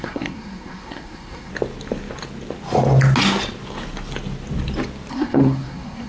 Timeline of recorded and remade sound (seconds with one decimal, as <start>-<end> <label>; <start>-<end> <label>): 0.0-1.5 remade; 1.5-5.1 recorded; 5.1-6.1 remade